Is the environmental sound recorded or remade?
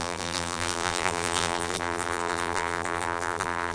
remade